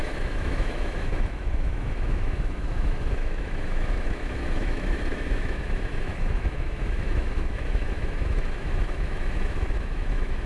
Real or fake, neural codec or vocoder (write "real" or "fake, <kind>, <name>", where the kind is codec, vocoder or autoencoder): fake, autoencoder, DAC-VAE